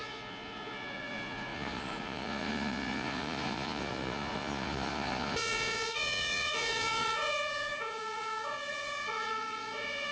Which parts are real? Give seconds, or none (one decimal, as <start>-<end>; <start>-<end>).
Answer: none